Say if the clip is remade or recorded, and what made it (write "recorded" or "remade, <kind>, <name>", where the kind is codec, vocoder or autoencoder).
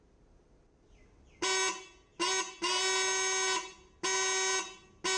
recorded